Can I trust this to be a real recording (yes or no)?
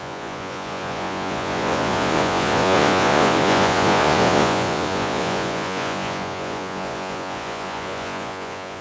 no